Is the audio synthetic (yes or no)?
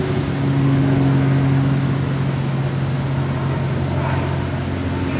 no